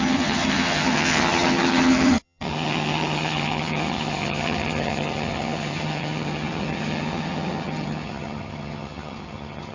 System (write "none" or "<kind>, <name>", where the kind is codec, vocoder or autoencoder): vocoder, HiFi-GAN